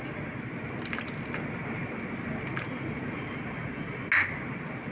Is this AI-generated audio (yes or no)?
no